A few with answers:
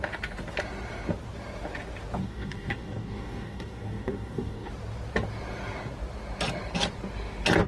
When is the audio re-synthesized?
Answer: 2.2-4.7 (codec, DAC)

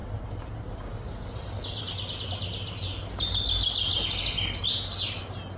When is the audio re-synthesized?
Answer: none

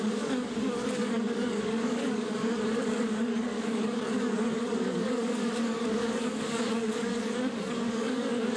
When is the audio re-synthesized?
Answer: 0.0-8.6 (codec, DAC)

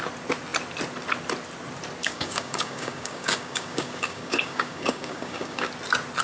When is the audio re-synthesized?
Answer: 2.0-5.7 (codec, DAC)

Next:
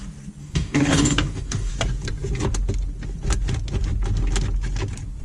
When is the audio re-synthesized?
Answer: 0.4-1.7 (codec, DAC)

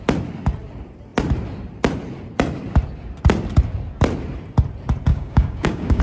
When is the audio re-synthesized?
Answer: 5.1-6.0 (codec, DAC)

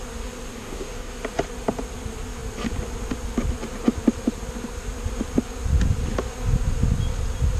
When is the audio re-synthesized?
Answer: 0.5-1.1 (codec, DAC)